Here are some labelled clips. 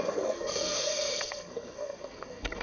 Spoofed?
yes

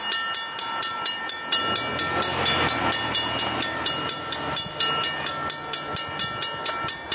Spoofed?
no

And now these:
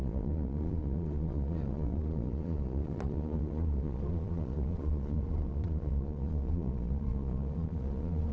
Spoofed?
yes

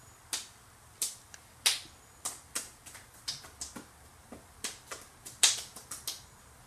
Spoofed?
no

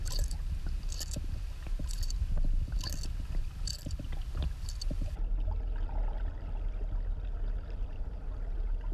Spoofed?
no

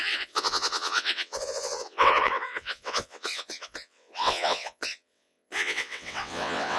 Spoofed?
yes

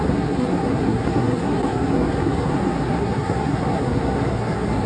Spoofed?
yes